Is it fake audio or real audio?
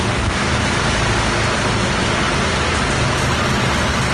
real